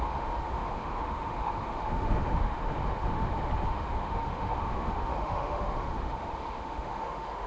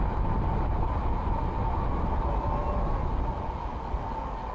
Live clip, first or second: second